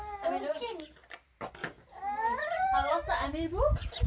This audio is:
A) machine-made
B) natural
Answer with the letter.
B